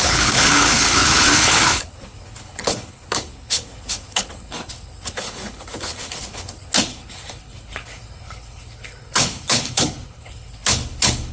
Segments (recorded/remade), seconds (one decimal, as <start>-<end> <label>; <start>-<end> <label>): 0.0-11.3 remade